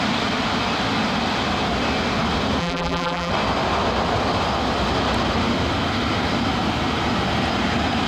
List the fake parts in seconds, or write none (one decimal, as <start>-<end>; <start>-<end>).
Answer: 2.6-3.3